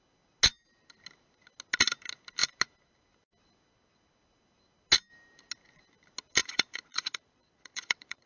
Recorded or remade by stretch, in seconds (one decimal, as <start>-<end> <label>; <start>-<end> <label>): 0.0-6.4 recorded; 6.4-8.3 remade